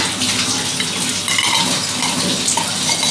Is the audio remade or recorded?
recorded